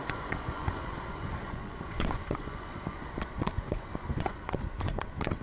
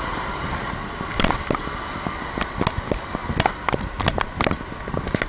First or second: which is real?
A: second